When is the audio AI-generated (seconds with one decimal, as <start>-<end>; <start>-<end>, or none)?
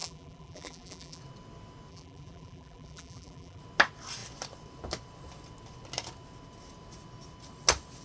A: 0.0-1.2; 1.9-3.6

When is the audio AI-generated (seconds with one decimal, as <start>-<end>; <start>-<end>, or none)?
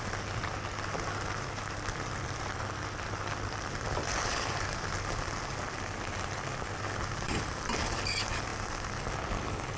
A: 0.0-8.5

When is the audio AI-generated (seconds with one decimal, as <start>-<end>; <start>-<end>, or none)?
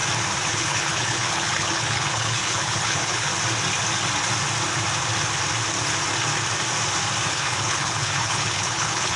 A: 0.5-3.3; 7.3-9.2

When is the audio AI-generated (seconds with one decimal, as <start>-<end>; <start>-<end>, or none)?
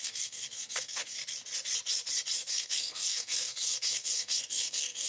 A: 0.0-1.2; 2.5-5.1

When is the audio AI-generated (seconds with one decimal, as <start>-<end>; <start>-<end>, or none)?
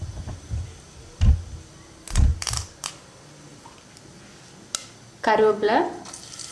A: 2.3-2.9